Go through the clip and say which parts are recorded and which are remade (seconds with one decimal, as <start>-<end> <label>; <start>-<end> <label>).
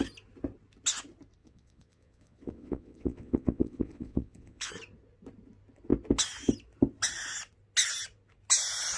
0.0-1.4 recorded; 1.4-4.7 remade; 4.7-9.0 recorded